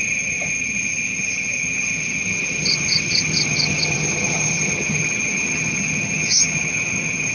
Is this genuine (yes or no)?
no